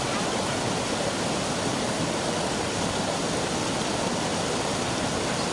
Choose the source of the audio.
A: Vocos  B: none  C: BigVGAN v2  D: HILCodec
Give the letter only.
B